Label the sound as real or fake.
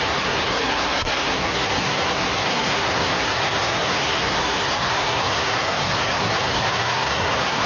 fake